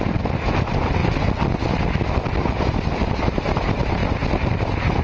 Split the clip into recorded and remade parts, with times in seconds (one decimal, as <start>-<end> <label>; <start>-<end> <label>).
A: 0.0-1.0 remade; 1.0-3.3 recorded; 3.3-4.0 remade; 4.0-5.0 recorded